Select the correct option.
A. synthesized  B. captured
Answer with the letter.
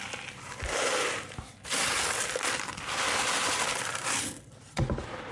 B